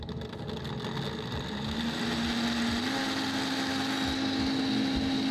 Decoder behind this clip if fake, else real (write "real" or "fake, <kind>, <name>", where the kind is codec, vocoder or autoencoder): real